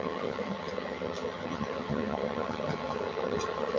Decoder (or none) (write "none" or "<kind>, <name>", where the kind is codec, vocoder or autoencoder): vocoder, HiFi-GAN